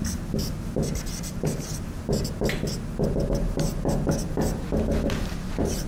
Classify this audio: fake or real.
real